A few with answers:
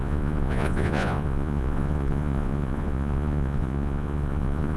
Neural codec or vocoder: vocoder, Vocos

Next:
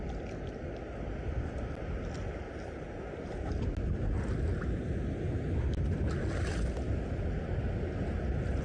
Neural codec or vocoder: none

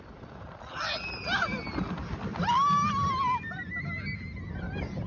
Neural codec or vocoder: none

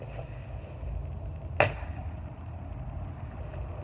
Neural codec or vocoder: none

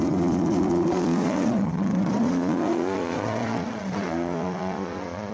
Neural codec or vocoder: vocoder, Vocos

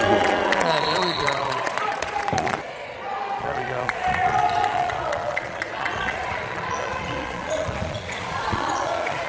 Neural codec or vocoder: vocoder, Vocos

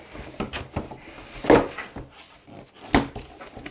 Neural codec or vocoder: none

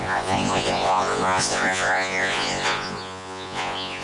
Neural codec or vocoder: vocoder, Vocos